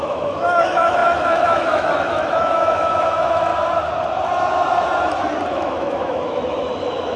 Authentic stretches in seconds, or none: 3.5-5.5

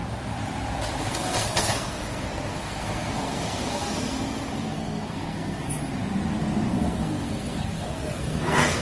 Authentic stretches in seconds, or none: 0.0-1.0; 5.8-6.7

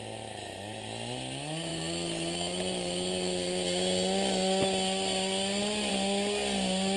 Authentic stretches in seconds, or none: 0.0-7.0

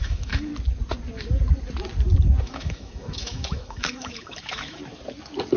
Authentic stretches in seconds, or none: 0.5-2.4; 4.8-5.6

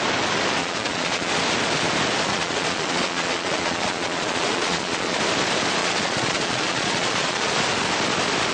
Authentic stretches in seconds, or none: 0.0-0.6; 1.3-2.3; 5.2-5.8; 7.5-8.5